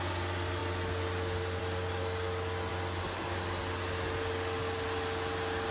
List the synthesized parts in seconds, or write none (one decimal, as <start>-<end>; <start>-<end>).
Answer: none

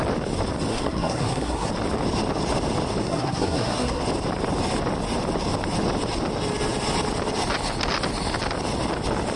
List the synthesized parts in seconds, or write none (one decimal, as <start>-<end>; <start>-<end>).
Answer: 0.7-1.7; 3.0-4.0

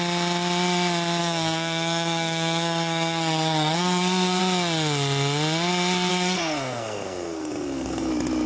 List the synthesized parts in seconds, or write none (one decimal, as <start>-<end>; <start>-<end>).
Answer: 1.2-4.4; 6.1-8.1

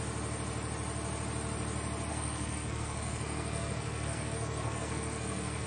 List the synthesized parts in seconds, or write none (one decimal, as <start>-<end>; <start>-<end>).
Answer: 2.1-5.7

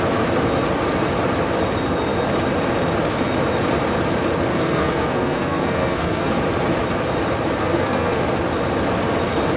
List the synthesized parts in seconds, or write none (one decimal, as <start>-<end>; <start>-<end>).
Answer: 4.5-6.3; 7.6-8.2

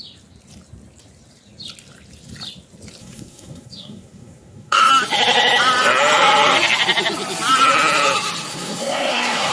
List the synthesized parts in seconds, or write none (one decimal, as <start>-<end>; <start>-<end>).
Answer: 3.0-4.9; 8.5-9.5